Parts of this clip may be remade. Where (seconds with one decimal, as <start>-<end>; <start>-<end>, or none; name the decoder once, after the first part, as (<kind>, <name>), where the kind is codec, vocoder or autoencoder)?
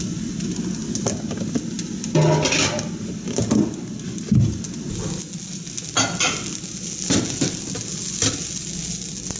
none